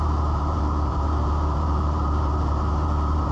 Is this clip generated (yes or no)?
yes